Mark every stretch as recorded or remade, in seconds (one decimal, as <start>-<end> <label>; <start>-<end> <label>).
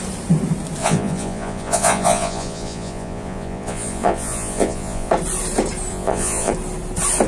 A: 0.0-0.8 recorded; 0.8-5.1 remade; 5.1-5.9 recorded; 5.9-6.5 remade; 6.5-7.3 recorded